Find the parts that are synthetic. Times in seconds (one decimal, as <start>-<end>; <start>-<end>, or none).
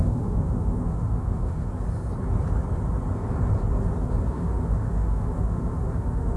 0.0-1.7; 4.3-6.4